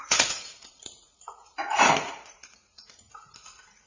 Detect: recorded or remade remade